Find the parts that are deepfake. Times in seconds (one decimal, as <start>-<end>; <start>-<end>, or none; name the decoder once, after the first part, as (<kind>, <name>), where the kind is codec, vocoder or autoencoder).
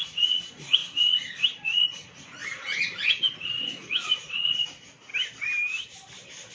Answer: 0.0-5.1 (vocoder, Vocos)